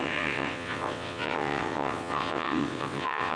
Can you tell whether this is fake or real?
fake